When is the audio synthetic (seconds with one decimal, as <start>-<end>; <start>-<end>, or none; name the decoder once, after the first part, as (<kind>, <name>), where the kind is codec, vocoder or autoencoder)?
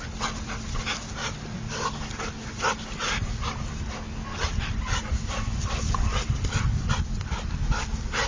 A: 3.0-3.8 (vocoder, BigVGAN v2); 4.3-5.0